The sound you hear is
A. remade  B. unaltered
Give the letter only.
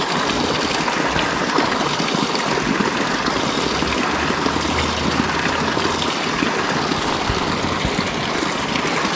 B